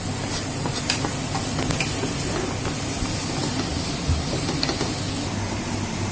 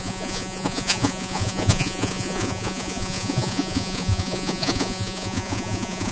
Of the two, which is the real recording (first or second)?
first